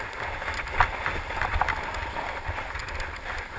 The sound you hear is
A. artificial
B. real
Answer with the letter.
B